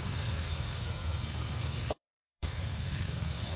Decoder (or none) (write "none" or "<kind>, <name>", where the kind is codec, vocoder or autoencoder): codec, SNAC